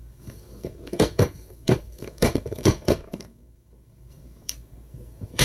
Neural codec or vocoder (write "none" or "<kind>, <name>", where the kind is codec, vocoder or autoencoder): codec, SNAC